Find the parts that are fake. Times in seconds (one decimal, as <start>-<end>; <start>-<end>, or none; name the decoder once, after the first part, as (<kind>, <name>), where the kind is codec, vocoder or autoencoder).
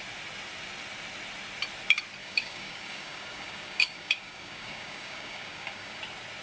2.2-6.0 (codec, DAC)